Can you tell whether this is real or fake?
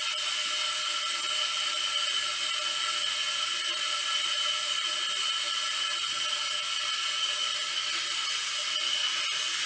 real